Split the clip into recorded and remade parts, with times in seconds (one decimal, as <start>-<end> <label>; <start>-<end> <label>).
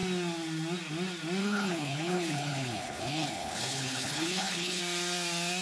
0.0-1.4 recorded; 1.4-4.8 remade; 4.8-5.6 recorded